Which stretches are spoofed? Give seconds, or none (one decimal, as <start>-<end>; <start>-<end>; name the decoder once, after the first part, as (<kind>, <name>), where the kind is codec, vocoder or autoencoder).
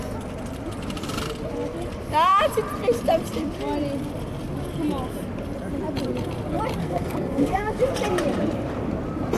6.8-7.8 (codec, SNAC)